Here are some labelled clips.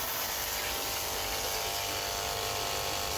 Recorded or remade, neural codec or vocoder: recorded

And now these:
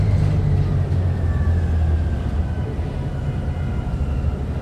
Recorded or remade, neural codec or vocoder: recorded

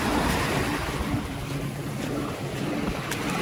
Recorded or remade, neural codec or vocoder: recorded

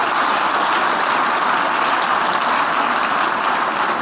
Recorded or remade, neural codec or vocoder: recorded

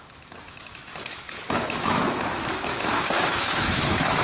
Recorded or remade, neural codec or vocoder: remade, autoencoder, DAC-VAE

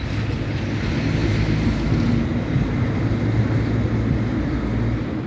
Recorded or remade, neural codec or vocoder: recorded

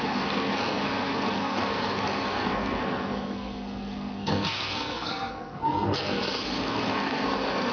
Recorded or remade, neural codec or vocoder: remade, codec, SNAC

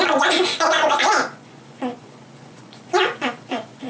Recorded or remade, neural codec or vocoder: remade, vocoder, Vocos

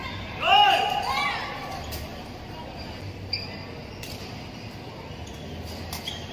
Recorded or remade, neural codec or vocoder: recorded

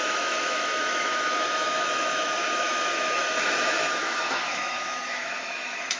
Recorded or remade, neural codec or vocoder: remade, autoencoder, DAC-VAE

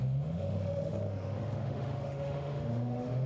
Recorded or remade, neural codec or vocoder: remade, autoencoder, DAC-VAE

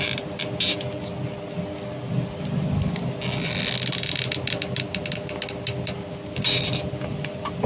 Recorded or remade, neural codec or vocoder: recorded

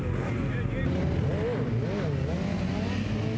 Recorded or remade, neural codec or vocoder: recorded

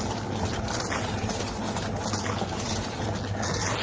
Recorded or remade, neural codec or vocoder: recorded